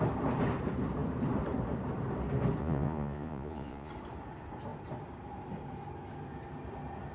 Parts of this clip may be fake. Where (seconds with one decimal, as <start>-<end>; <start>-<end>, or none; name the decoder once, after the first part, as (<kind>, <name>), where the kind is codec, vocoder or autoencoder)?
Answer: 2.6-3.9 (vocoder, Vocos)